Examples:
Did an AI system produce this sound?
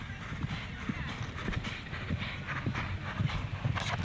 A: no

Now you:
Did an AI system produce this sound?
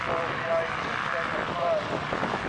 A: no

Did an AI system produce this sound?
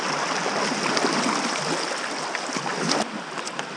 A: no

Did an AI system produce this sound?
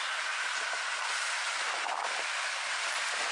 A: no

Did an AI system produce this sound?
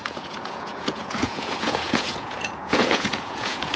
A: yes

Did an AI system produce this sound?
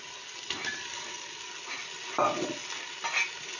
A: no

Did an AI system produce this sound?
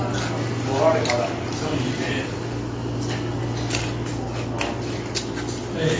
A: no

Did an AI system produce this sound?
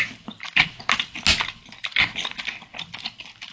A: no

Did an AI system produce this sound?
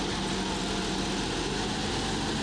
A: no